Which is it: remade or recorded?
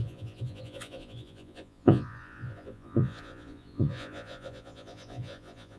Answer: remade